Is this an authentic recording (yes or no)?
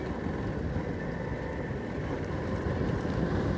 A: yes